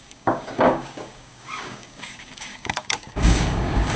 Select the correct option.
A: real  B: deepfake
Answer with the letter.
B